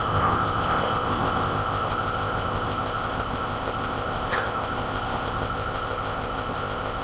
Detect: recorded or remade remade